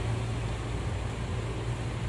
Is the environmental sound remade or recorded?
recorded